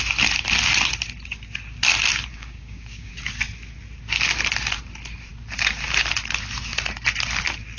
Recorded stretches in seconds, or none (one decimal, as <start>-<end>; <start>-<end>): 0.0-2.3; 3.1-7.8